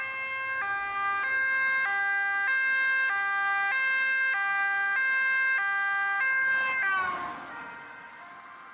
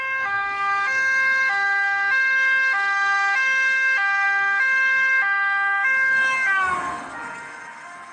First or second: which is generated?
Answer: second